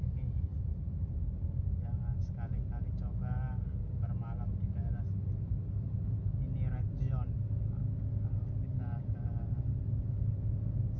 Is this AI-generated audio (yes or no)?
no